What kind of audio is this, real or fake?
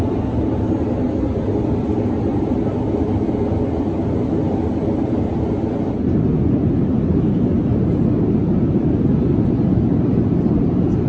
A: real